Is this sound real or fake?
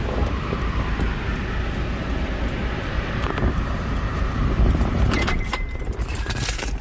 fake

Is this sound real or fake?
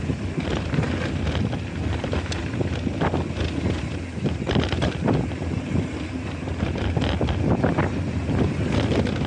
real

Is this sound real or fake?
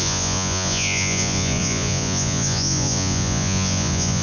fake